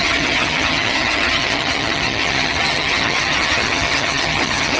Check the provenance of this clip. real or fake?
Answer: fake